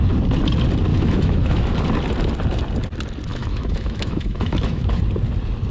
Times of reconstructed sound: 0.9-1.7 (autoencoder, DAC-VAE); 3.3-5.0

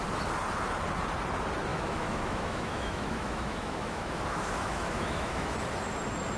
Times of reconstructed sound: 1.7-5.5 (autoencoder, DAC-VAE)

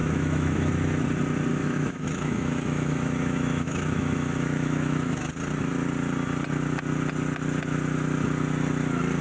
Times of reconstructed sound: 0.0-0.7 (autoencoder, DAC-VAE); 1.5-5.3

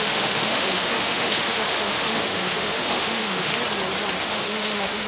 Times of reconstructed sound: 0.0-3.5 (autoencoder, DAC-VAE); 4.2-5.1

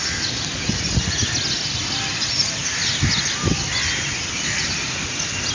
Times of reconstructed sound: none

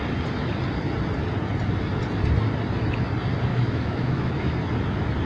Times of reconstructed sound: 3.5-4.3 (autoencoder, DAC-VAE)

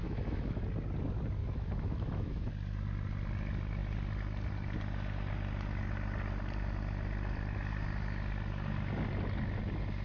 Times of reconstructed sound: 0.0-0.6 (autoencoder, DAC-VAE); 1.4-2.5